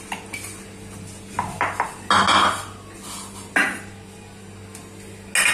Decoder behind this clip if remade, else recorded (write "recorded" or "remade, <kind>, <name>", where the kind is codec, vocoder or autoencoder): recorded